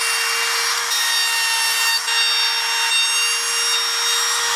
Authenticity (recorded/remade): recorded